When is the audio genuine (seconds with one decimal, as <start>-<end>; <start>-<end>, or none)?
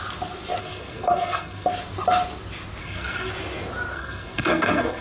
0.0-0.6; 1.7-2.8; 3.3-3.9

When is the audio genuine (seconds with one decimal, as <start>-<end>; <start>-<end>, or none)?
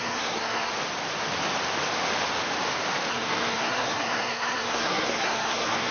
0.7-3.1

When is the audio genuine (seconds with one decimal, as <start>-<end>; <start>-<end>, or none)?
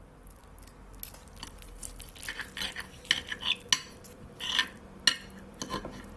0.0-6.2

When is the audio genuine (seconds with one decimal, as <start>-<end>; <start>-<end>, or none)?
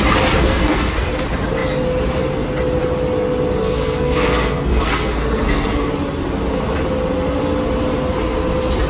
0.0-0.4; 1.1-3.6; 5.9-8.9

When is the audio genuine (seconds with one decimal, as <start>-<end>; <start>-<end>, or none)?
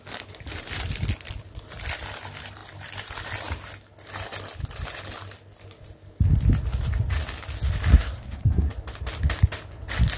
0.0-7.9; 8.7-10.2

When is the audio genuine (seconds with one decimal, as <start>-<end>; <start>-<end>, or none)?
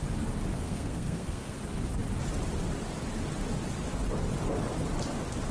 0.0-0.5; 1.6-5.5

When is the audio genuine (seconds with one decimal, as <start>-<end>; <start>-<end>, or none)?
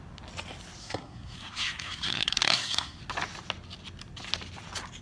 0.0-0.8; 3.0-5.0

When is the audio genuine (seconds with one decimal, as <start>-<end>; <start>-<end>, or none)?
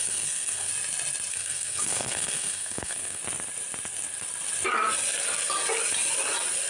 0.7-1.3; 3.2-6.7